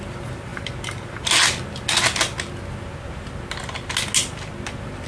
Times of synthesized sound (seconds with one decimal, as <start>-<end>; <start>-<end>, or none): none